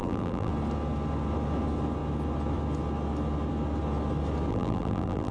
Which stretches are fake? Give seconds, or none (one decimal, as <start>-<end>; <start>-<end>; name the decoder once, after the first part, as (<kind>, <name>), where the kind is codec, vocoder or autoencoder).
0.0-0.5 (vocoder, BigVGAN v2); 4.5-5.3